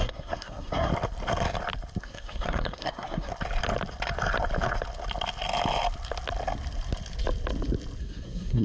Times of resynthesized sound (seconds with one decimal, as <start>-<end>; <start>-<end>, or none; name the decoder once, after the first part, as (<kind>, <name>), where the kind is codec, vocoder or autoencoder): 0.0-0.9 (codec, SNAC); 2.0-3.3; 8.0-8.6